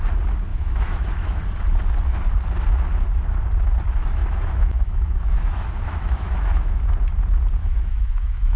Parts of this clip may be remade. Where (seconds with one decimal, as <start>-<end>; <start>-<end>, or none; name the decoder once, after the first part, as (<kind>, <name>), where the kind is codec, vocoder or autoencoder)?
0.5-1.4 (autoencoder, DAC-VAE); 4.2-6.8; 7.6-8.6